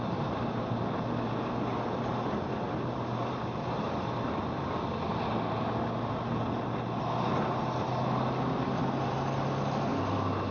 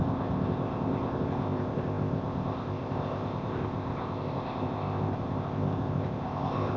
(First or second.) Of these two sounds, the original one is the first